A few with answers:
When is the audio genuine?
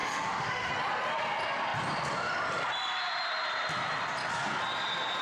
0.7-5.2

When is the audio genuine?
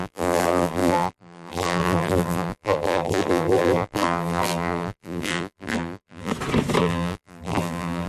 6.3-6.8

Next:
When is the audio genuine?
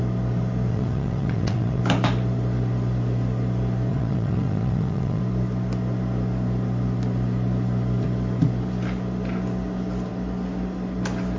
0.0-0.7; 1.8-3.9; 5.2-11.4